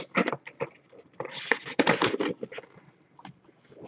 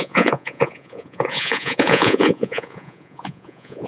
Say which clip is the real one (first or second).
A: first